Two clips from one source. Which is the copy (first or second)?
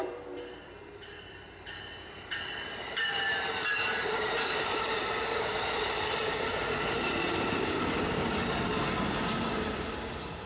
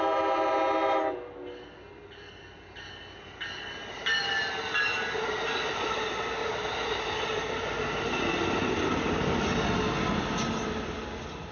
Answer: first